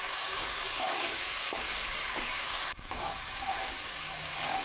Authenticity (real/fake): fake